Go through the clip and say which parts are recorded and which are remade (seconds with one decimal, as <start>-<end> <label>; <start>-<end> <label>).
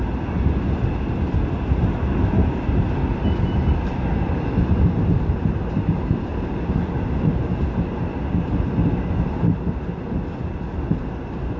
0.0-11.6 recorded